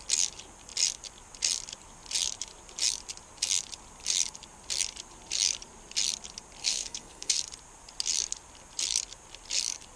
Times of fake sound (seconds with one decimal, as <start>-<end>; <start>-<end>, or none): 6.6-7.4